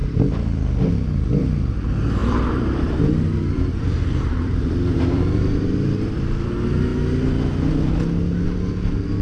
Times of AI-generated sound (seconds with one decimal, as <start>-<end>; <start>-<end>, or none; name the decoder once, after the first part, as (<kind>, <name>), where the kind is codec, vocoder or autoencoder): 2.2-6.5 (vocoder, BigVGAN v2)